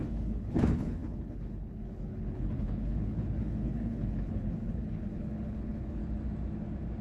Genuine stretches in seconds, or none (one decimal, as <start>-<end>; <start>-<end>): 6.0-7.0